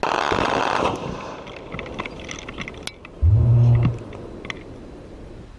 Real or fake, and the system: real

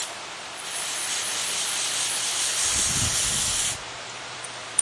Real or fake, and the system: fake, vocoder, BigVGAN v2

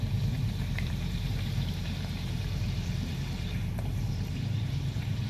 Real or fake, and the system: fake, vocoder, BigVGAN v2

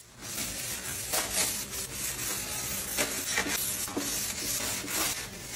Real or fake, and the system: real